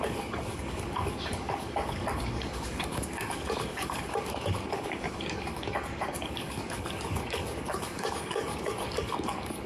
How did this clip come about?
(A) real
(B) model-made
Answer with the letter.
B